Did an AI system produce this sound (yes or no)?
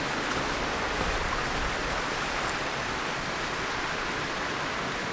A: no